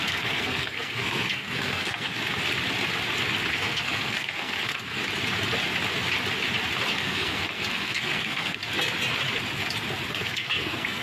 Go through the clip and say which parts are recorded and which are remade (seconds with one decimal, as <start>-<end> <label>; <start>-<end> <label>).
0.0-2.1 remade; 2.1-3.5 recorded; 3.5-5.0 remade; 5.0-6.9 recorded; 6.9-8.6 remade; 8.6-10.1 recorded; 10.1-11.0 remade